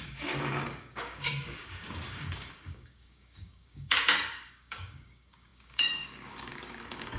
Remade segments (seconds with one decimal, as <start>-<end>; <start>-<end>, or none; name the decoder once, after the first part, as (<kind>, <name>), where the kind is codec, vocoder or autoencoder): 0.0-7.2 (codec, DAC)